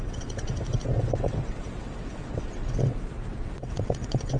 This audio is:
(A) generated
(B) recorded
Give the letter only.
A